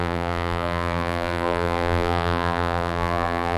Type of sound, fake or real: fake